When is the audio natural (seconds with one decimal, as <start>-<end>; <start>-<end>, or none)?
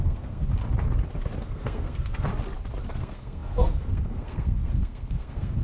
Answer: 0.4-1.4; 2.3-3.0